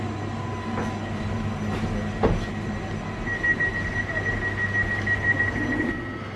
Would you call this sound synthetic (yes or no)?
no